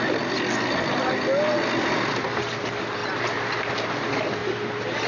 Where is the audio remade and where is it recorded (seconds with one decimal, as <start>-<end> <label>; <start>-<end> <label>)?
0.0-5.1 recorded